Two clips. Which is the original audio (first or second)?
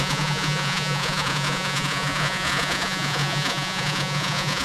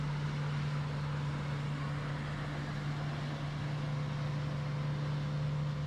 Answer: second